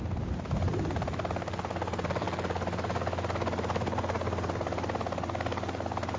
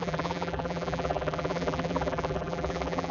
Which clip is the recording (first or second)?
first